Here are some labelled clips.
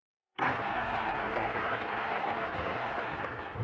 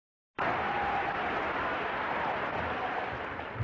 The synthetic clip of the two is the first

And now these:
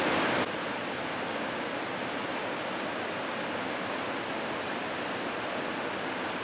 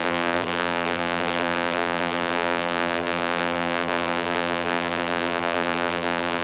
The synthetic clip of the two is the second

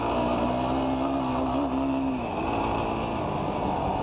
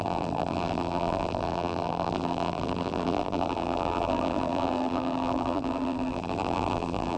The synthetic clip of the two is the second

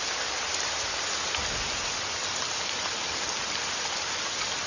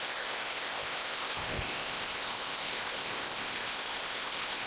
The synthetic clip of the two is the second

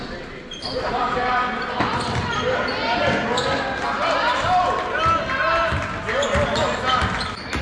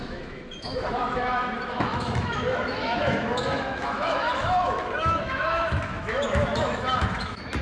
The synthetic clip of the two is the second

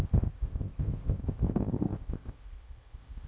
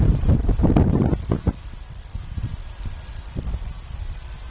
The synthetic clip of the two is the first